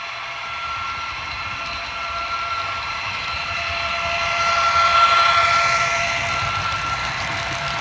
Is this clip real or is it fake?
real